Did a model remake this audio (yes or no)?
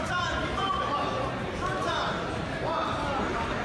no